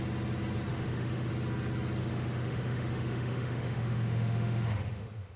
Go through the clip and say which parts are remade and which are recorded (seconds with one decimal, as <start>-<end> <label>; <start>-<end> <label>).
0.0-0.7 recorded; 0.7-1.3 remade; 1.3-2.0 recorded; 2.0-5.4 remade